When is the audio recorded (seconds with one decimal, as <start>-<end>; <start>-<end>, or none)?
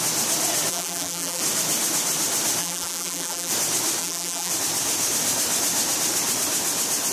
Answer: 0.0-0.7; 1.4-2.6; 3.5-4.0; 4.5-7.1